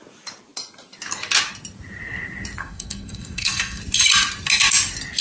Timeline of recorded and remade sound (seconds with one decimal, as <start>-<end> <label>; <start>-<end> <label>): 0.0-2.6 recorded; 2.6-3.8 remade; 3.8-5.2 recorded